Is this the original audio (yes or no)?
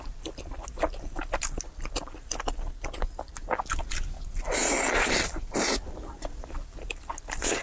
yes